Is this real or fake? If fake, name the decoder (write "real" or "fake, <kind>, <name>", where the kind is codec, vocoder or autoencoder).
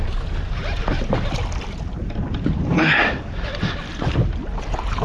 real